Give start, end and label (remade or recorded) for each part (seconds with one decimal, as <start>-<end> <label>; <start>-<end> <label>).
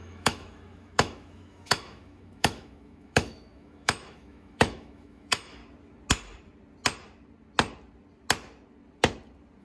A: 0.0-5.6 remade; 5.6-9.6 recorded